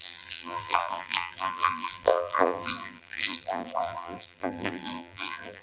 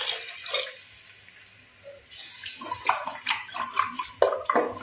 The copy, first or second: first